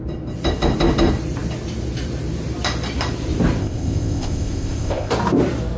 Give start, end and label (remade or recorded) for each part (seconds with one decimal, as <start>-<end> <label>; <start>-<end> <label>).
0.0-3.6 recorded; 3.6-5.1 remade; 5.1-5.8 recorded